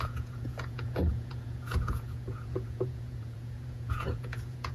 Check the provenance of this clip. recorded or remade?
remade